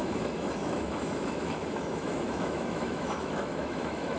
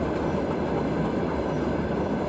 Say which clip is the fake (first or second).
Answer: first